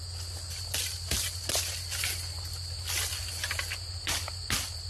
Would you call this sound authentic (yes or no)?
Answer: yes